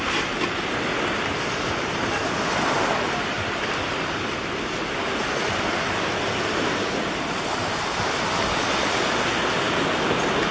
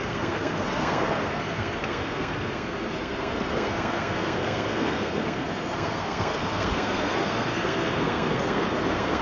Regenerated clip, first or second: second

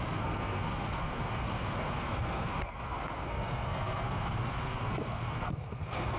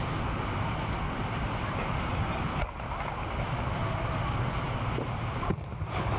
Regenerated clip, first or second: first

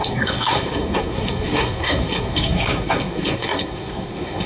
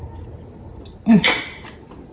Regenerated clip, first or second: first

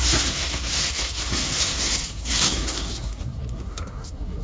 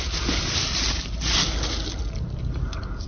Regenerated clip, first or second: first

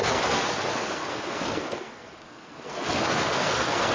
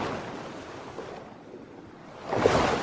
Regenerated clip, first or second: first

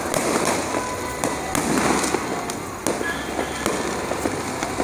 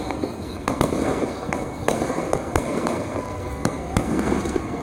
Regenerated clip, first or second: second